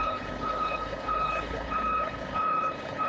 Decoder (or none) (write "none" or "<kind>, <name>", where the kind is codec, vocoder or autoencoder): codec, HILCodec